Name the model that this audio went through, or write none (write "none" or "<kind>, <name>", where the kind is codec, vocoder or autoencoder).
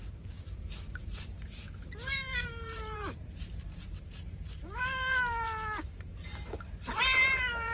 vocoder, BigVGAN v2